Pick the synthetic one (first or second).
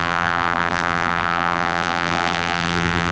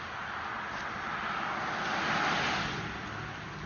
first